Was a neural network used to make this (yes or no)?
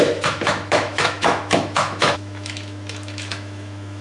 yes